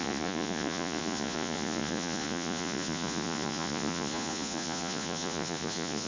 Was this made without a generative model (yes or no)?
no